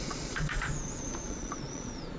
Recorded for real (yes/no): no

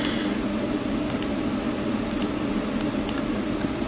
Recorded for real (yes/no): yes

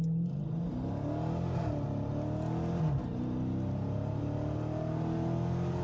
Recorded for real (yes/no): yes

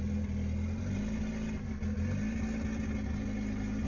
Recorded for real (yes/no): yes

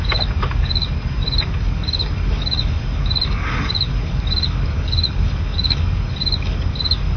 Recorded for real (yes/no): no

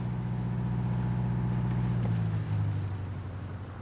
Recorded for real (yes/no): yes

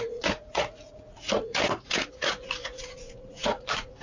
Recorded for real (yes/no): no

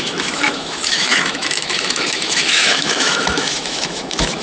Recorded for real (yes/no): no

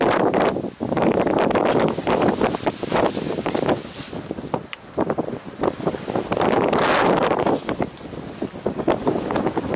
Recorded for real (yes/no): yes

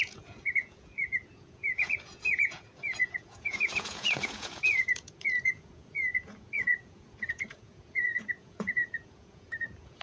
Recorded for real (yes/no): no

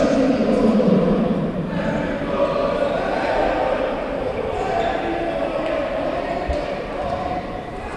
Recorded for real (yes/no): no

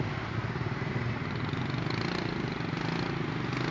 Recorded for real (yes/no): yes